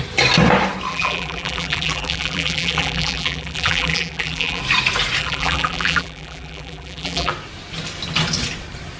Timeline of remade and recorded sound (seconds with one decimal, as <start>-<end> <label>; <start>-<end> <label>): 0.0-0.9 recorded; 0.9-4.6 remade; 4.6-5.2 recorded; 5.2-7.3 remade; 7.3-9.0 recorded